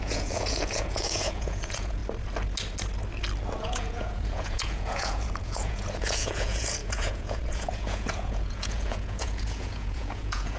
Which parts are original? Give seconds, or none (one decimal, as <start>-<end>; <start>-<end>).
2.0-3.6